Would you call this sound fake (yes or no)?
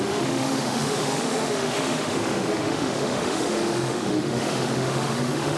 yes